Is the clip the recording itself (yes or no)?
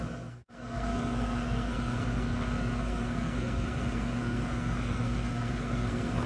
no